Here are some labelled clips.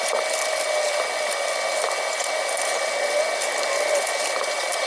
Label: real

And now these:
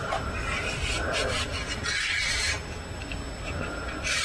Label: real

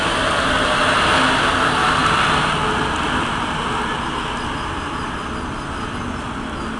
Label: real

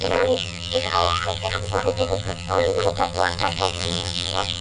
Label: fake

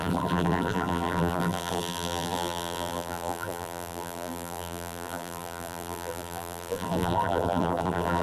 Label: fake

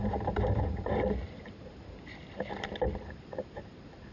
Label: fake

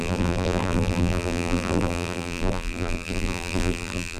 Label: fake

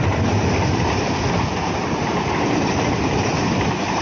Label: fake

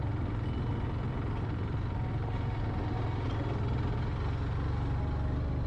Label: real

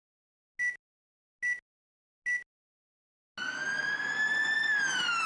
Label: real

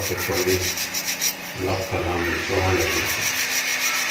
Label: fake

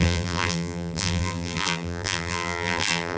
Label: fake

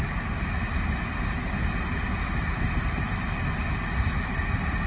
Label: real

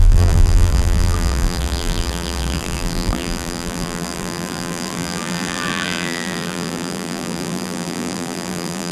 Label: fake